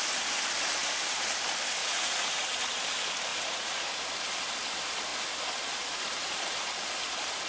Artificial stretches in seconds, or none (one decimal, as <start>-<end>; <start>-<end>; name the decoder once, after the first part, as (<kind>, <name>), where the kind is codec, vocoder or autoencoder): 1.8-2.7 (vocoder, Vocos); 3.3-3.8